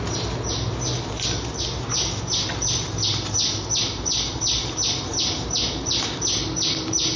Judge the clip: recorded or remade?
recorded